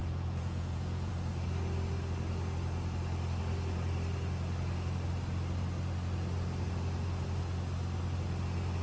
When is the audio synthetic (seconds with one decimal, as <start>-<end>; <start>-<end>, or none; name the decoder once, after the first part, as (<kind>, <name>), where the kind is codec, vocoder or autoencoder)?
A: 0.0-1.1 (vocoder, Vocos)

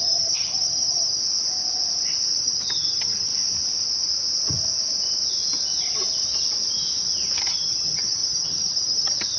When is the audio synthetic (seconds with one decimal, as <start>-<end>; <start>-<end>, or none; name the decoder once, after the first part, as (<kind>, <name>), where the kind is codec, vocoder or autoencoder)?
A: 0.0-1.2 (vocoder, HiFi-GAN); 2.4-3.3; 7.5-9.4

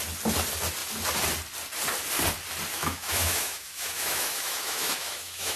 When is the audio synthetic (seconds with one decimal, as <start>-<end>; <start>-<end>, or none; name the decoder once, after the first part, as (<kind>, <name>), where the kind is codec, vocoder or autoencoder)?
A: 2.7-5.6 (autoencoder, DAC-VAE)